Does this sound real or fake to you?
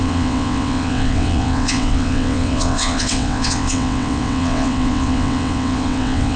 fake